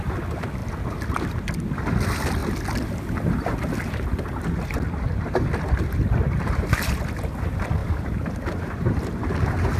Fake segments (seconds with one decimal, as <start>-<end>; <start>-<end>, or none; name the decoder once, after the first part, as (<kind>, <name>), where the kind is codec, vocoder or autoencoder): none